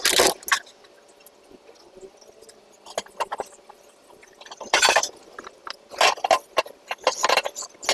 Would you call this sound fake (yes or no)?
no